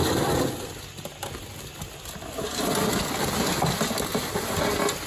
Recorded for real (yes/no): yes